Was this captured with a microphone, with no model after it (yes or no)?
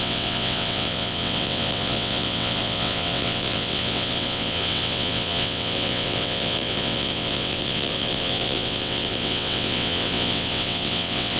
no